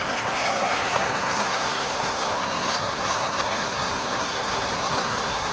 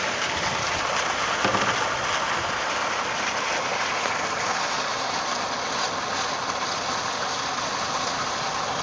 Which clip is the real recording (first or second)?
second